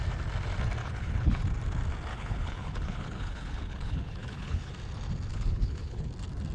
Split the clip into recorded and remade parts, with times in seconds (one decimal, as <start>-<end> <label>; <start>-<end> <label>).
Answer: 0.0-0.8 recorded; 0.8-1.4 remade; 1.4-2.1 recorded; 2.1-4.7 remade; 4.7-5.3 recorded; 5.3-6.1 remade; 6.1-6.5 recorded